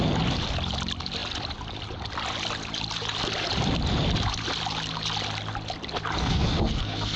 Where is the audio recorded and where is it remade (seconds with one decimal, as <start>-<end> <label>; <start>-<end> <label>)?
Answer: 0.0-6.2 recorded; 6.2-7.2 remade